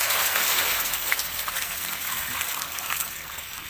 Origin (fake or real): fake